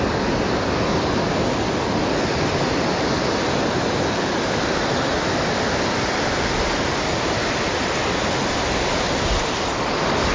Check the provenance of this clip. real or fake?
real